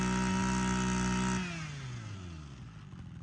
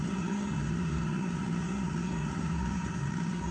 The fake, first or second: second